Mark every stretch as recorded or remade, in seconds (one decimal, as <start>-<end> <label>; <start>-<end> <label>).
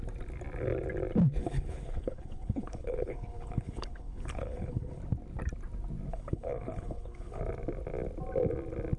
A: 0.0-1.4 recorded; 1.4-5.0 remade; 5.0-6.1 recorded; 6.1-7.4 remade; 7.4-9.0 recorded